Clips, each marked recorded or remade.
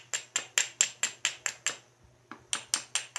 recorded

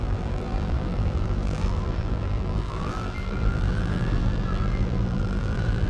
remade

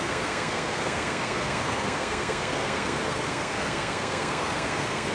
remade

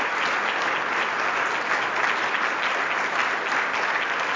recorded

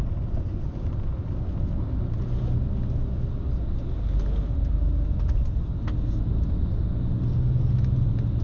recorded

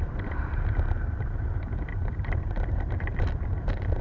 remade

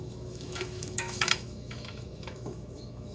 remade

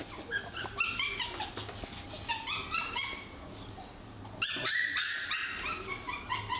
recorded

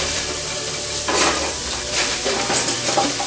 remade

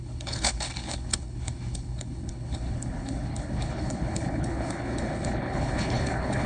remade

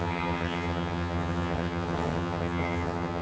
remade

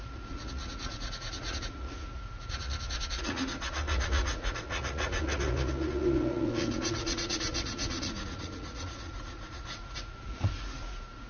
remade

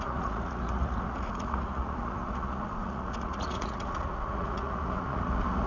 remade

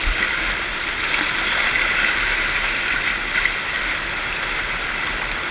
recorded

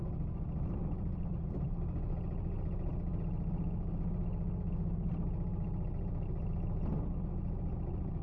recorded